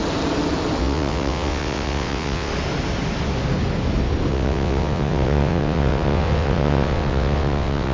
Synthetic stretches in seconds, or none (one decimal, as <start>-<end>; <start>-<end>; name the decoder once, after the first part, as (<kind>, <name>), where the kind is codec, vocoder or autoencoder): 0.8-2.5 (vocoder, WaveNeXt); 4.3-7.9